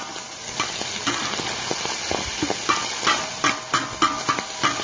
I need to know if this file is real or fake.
real